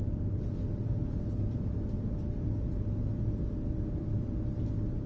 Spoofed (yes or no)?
no